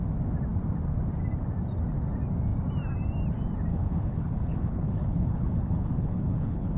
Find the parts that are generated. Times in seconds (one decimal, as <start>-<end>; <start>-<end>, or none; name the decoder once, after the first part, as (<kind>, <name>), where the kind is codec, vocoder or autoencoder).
3.7-6.8 (codec, HILCodec)